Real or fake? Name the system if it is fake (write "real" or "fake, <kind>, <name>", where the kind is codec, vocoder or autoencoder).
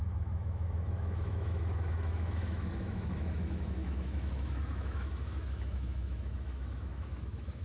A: fake, autoencoder, DAC-VAE